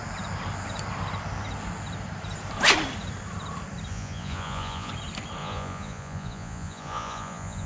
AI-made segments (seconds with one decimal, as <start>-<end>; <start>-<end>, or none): 3.9-4.9; 5.4-7.7